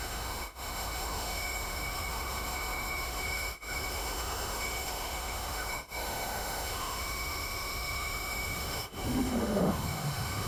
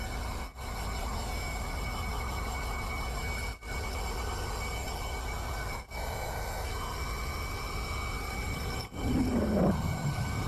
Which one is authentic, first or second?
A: second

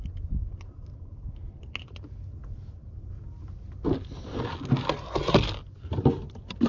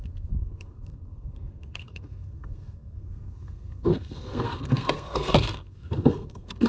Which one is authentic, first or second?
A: first